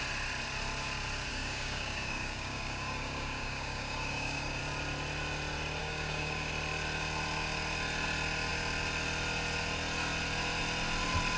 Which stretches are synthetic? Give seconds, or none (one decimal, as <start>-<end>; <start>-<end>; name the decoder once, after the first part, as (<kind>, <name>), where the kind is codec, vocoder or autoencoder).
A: 1.3-4.6 (codec, DAC); 5.8-6.5